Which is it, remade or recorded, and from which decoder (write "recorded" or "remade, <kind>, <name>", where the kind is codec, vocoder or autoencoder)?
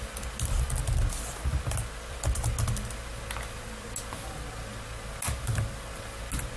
recorded